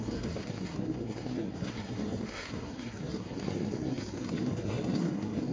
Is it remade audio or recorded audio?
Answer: remade